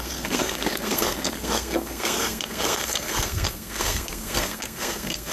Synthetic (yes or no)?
yes